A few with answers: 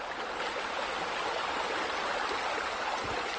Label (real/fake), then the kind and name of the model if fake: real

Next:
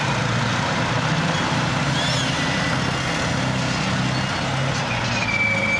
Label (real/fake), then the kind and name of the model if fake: real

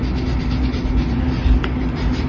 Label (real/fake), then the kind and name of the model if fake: real